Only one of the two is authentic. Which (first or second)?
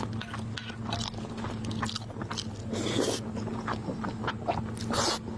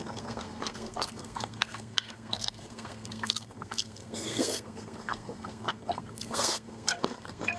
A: first